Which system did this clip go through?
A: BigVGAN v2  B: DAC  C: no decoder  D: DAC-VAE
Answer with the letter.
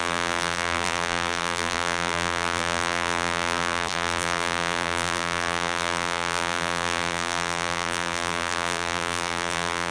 A